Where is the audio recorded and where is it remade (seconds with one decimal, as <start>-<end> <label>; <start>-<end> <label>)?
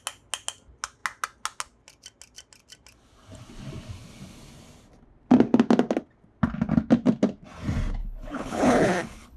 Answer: 0.0-8.0 recorded; 8.0-9.4 remade